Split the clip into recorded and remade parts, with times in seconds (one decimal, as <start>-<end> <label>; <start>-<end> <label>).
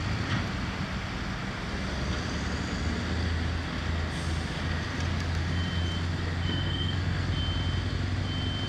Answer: 0.0-6.4 recorded; 6.4-7.3 remade; 7.3-8.7 recorded